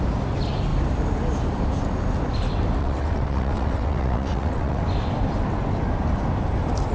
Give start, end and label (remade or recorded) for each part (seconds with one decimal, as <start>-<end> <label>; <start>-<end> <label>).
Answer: 0.0-2.8 recorded; 2.8-4.8 remade; 4.8-6.9 recorded